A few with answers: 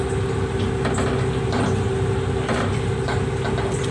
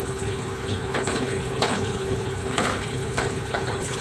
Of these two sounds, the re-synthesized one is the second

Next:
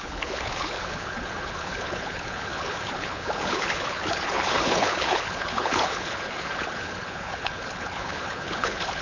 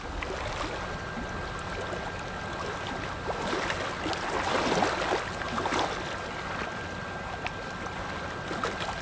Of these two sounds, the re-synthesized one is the first